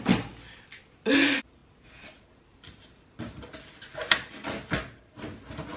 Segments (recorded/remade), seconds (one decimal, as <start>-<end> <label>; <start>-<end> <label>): 0.0-5.8 recorded